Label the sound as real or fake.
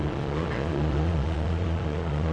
fake